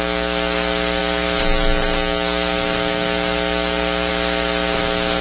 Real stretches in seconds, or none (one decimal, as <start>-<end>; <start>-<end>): 0.0-5.2